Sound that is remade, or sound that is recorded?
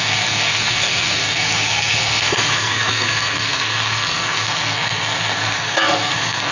remade